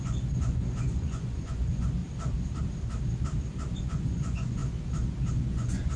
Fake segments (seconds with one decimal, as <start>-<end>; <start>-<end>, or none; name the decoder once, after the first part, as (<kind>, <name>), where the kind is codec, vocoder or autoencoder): 0.0-2.0 (vocoder, Vocos); 3.8-4.6; 5.3-6.0